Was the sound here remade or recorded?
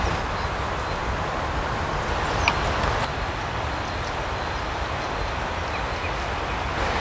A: recorded